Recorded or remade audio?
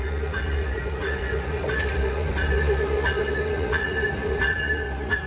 remade